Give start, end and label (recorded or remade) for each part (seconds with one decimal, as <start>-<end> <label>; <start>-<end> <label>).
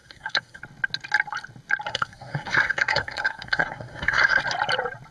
0.0-0.6 remade; 0.6-1.9 recorded; 1.9-4.4 remade; 4.4-5.1 recorded